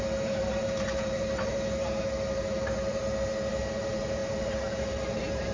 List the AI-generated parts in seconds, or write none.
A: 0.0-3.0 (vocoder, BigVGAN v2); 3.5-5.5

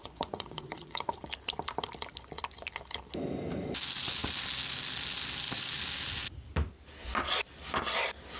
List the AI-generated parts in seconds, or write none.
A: 0.0-1.1 (vocoder, Vocos)